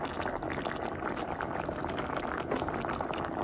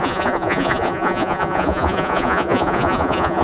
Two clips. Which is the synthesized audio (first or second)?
second